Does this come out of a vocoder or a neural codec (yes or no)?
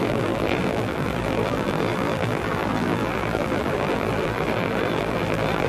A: yes